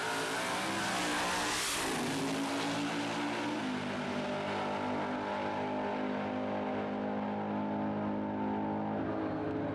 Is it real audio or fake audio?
real